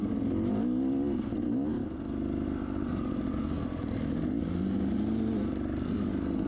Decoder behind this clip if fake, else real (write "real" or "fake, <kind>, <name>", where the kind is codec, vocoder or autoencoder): real